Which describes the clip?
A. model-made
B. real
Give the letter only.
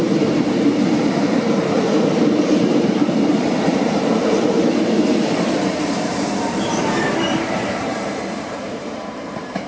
A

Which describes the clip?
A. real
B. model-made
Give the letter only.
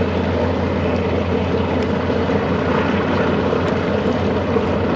A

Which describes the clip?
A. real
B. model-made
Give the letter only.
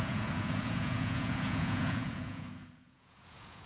B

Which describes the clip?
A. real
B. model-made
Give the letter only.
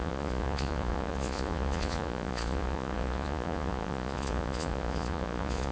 B